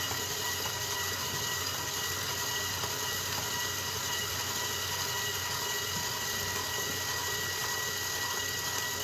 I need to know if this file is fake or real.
real